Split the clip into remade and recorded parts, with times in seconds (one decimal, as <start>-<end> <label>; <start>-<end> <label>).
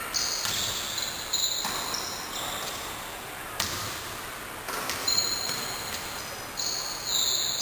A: 0.0-5.0 recorded; 5.0-6.2 remade; 6.2-7.6 recorded